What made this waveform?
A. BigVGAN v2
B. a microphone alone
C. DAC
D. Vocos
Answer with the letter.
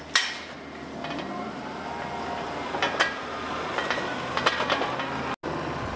B